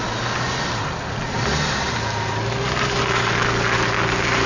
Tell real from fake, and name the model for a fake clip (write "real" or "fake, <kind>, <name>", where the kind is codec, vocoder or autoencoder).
real